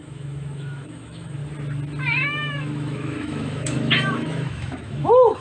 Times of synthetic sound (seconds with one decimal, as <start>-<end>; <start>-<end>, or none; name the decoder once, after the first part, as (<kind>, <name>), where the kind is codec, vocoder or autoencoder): 0.0-1.4 (autoencoder, DAC-VAE); 2.1-5.4